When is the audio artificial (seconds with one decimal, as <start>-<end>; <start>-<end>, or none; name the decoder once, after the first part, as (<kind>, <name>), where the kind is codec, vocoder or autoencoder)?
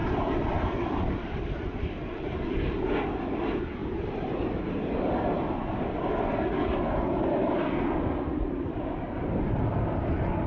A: 0.0-2.5 (vocoder, BigVGAN v2); 3.8-4.7